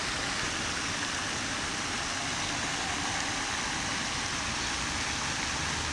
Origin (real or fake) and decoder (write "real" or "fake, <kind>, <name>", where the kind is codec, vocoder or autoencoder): real